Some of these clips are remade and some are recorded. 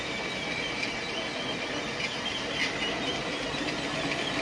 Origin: recorded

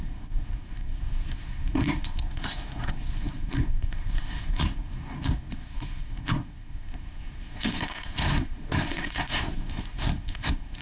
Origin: remade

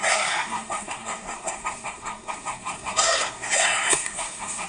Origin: remade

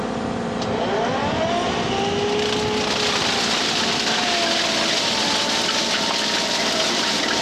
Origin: recorded